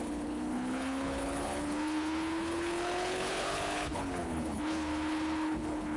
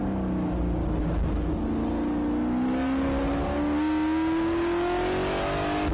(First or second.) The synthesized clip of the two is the first